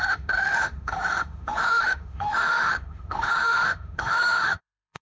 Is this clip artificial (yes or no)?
yes